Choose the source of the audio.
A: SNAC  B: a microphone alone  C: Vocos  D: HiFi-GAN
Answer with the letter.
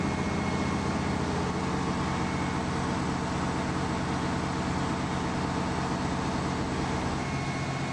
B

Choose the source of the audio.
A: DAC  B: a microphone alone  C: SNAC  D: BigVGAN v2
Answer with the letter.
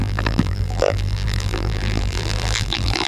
D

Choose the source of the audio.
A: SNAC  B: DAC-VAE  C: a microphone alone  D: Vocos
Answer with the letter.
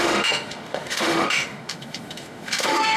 B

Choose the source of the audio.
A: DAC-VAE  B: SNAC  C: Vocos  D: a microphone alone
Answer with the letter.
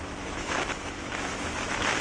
A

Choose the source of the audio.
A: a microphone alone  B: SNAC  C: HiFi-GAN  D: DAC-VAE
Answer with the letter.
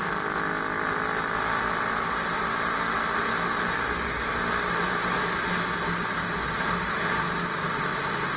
A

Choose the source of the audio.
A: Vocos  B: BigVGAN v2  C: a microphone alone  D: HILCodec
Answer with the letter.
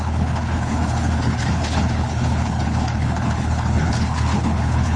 D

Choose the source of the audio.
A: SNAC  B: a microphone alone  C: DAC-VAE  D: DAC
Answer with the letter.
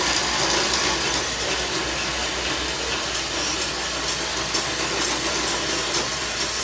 B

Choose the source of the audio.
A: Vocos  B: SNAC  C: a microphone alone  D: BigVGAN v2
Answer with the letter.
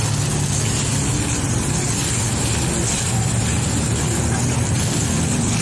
C